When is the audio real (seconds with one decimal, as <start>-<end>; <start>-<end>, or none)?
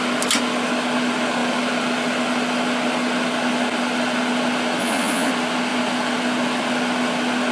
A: 0.0-4.8; 5.3-7.5